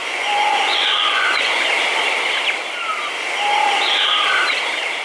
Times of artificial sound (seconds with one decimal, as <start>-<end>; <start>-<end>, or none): 0.0-1.7

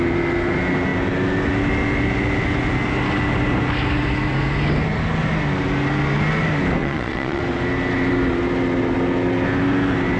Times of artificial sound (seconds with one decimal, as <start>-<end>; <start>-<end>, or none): 6.8-7.4

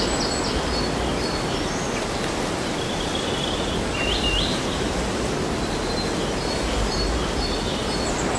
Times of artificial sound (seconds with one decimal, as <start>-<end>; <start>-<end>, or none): 3.1-5.4

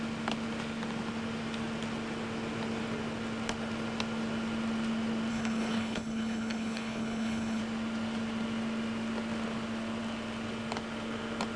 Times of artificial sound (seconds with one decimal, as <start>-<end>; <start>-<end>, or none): 5.3-7.6